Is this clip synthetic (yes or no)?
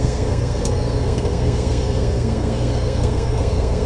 yes